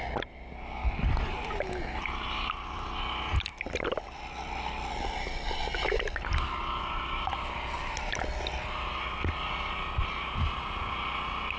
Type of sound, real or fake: real